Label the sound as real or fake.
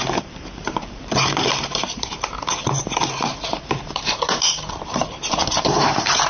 fake